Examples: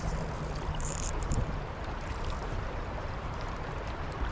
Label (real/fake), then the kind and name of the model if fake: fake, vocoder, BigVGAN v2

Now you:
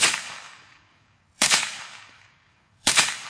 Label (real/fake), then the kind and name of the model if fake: fake, codec, DAC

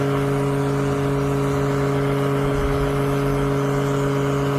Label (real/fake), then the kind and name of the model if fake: real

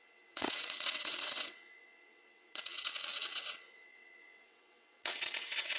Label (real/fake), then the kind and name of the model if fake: fake, vocoder, WaveNeXt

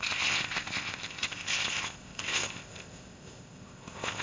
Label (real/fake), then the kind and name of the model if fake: fake, codec, ZipCodec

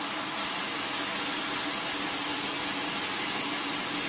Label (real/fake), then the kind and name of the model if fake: real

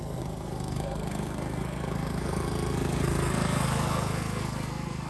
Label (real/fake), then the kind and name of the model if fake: fake, codec, SNAC